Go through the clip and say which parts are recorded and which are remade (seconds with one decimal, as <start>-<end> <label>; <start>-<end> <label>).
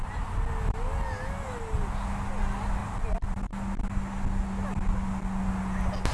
0.0-2.8 recorded; 2.8-3.5 remade; 3.5-6.1 recorded